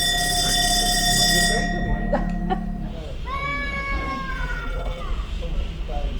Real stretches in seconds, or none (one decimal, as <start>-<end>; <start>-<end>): 0.0-4.3; 5.0-6.2